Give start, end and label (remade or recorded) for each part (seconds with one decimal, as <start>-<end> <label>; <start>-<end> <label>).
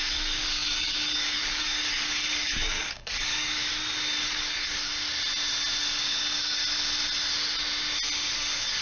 0.0-3.6 remade; 3.6-4.2 recorded; 4.2-4.9 remade; 4.9-5.8 recorded; 5.8-6.6 remade; 6.6-8.3 recorded; 8.3-8.8 remade